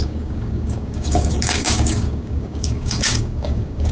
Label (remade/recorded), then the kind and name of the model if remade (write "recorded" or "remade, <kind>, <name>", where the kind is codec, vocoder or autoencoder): remade, codec, DAC